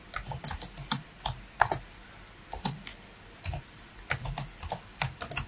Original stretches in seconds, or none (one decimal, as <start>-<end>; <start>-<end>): 0.0-5.5